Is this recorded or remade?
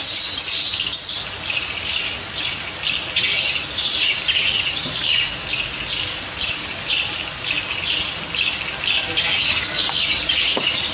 recorded